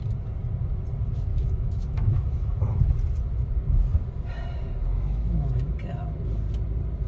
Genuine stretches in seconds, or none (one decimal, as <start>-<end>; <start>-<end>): 0.0-1.3; 2.8-4.9; 5.7-7.1